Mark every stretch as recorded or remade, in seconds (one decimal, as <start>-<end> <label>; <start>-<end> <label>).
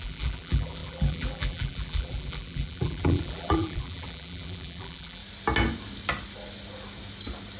0.0-5.2 remade; 5.2-7.6 recorded